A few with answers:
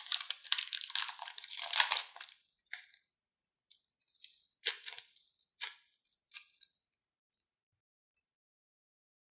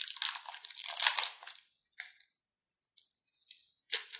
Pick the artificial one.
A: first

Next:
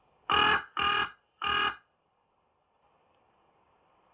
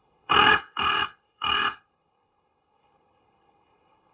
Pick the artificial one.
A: second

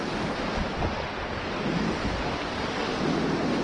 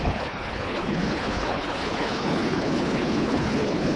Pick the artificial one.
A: second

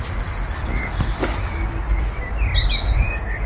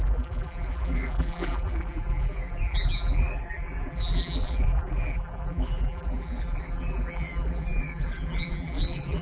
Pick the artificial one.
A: second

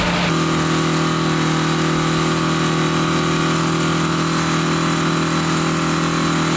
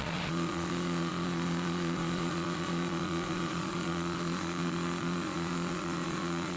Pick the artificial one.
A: second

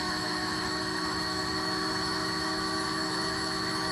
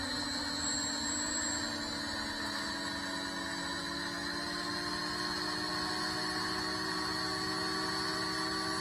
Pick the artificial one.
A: first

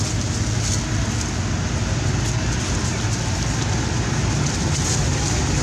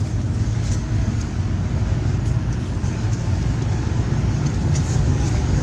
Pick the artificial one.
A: second